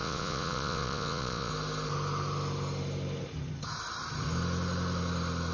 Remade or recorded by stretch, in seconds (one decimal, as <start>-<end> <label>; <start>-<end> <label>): 0.0-1.5 remade; 1.5-5.5 recorded